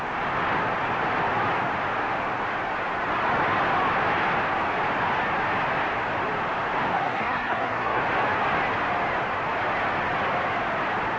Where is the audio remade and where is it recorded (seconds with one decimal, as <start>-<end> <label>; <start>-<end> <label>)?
0.0-6.9 recorded; 6.9-8.0 remade; 8.0-11.2 recorded